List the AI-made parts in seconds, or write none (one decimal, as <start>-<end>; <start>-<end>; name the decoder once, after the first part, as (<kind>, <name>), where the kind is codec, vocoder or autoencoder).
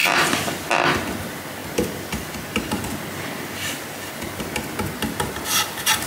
none